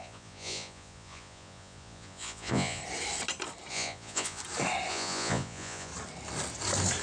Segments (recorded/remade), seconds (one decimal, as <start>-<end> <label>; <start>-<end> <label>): 0.0-2.8 remade; 2.8-3.7 recorded; 3.7-4.4 remade; 4.4-4.9 recorded; 4.9-5.9 remade; 5.9-7.0 recorded